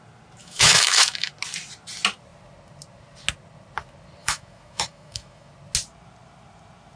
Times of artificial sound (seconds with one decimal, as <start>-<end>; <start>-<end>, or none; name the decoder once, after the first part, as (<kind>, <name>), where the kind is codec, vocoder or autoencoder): 0.4-1.3 (autoencoder, DAC-VAE); 4.2-5.5